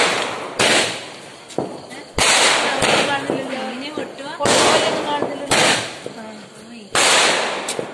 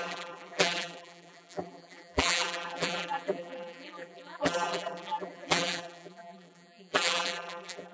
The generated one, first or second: second